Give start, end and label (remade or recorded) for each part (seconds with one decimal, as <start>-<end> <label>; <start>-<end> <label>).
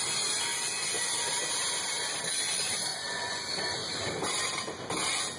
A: 0.0-2.9 recorded; 2.9-3.4 remade; 3.4-5.4 recorded